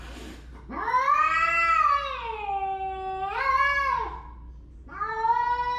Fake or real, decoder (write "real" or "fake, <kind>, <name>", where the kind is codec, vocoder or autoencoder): real